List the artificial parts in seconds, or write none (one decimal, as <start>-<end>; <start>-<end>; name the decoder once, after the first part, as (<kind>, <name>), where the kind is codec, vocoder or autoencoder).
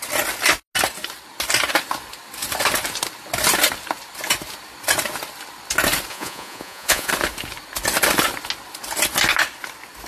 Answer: 6.1-7.1 (vocoder, Vocos)